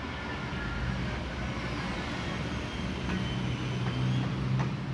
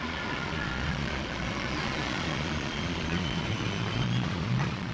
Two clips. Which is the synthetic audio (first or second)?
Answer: second